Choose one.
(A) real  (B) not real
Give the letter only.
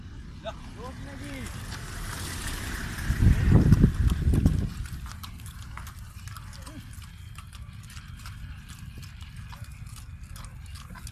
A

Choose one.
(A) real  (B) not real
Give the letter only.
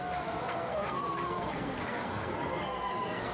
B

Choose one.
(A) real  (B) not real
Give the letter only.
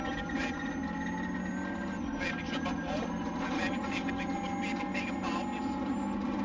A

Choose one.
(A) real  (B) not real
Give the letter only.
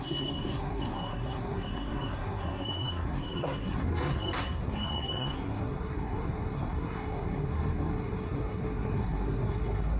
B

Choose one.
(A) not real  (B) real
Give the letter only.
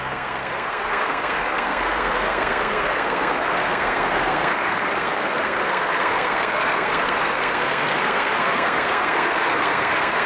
A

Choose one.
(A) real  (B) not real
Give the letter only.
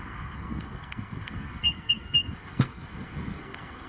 B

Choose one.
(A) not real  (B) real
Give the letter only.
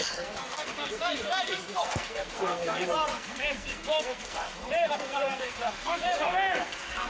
A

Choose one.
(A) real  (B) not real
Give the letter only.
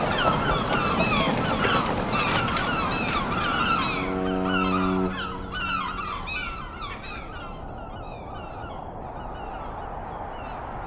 A